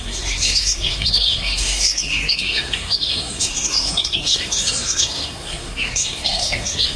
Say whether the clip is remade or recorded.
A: remade